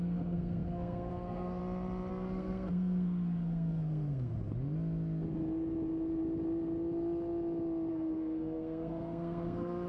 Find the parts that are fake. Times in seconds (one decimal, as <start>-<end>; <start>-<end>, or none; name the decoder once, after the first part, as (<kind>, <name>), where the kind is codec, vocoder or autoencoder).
0.0-1.6 (codec, SNAC); 2.1-4.3; 7.9-9.9